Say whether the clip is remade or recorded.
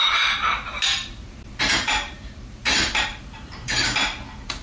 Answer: remade